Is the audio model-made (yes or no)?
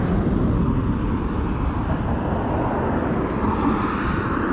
no